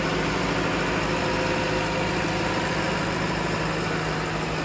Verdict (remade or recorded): recorded